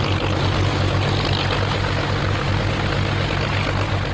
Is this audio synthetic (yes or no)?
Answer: no